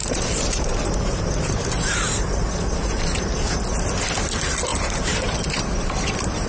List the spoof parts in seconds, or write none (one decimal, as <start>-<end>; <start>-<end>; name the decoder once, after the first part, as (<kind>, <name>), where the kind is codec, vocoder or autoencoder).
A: 0.0-3.2 (vocoder, BigVGAN v2); 4.7-6.5